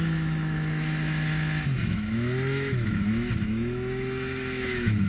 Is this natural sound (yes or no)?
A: no